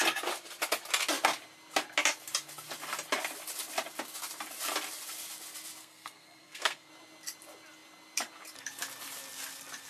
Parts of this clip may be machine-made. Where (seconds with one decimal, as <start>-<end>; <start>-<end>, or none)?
5.8-6.9